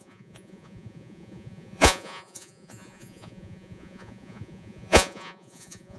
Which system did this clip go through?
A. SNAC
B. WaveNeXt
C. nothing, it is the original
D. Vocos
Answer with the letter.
D